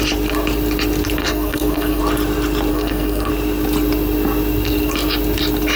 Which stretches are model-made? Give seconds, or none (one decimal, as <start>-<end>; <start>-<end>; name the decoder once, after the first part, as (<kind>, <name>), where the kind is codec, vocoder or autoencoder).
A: 1.2-2.0 (codec, SNAC); 2.7-3.3